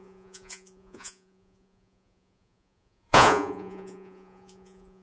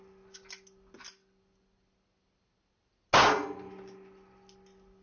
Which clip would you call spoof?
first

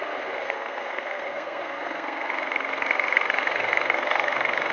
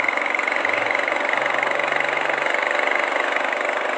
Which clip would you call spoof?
first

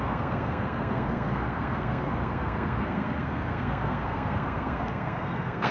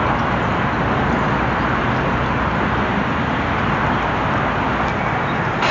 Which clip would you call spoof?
first